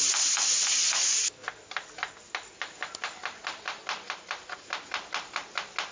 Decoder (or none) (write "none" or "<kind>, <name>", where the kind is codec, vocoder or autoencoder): none